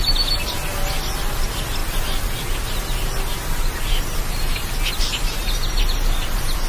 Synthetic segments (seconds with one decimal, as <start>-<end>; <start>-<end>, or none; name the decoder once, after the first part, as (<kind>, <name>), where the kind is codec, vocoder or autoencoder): none